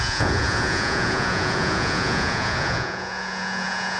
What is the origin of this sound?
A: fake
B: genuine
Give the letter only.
A